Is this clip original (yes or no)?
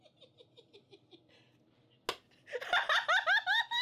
yes